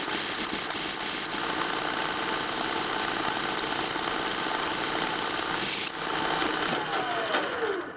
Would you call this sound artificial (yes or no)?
no